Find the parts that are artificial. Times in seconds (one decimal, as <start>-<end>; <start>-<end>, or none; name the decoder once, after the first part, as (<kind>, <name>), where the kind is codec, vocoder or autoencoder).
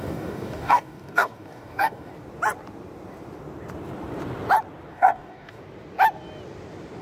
0.0-2.1 (codec, DAC); 4.9-5.6